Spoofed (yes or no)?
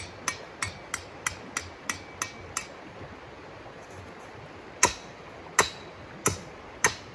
no